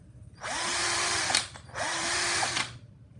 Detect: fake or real fake